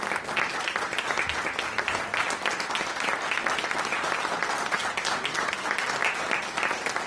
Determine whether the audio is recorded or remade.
recorded